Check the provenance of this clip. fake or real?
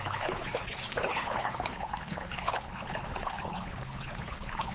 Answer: fake